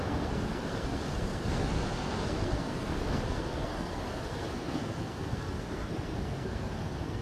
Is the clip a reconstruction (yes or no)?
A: yes